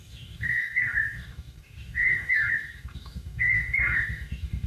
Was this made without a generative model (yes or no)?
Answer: no